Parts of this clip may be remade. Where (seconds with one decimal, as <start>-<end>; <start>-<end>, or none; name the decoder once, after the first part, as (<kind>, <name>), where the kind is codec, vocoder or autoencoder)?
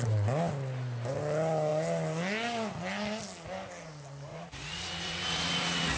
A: 4.3-6.0 (vocoder, Vocos)